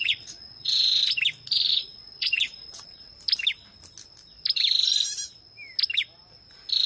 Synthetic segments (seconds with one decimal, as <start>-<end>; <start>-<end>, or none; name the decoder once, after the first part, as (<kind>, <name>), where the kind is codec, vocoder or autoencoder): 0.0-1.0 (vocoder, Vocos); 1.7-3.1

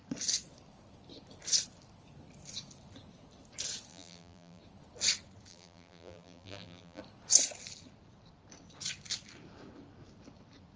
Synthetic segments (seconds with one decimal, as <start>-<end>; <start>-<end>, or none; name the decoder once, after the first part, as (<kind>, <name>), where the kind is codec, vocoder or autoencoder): 3.9-4.6 (vocoder, BigVGAN v2); 5.5-7.0

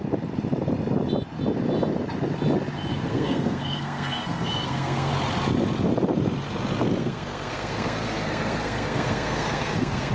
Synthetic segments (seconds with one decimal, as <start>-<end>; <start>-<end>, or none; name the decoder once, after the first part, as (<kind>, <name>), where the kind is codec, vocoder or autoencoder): 2.9-5.1 (codec, SNAC); 7.0-10.1